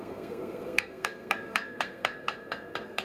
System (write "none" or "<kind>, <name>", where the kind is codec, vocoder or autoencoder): codec, SNAC